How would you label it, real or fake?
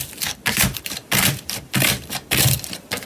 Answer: fake